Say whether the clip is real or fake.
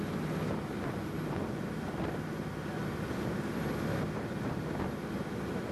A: real